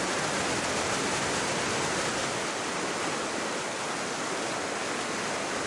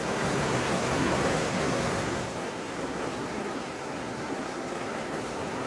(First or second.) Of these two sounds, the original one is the first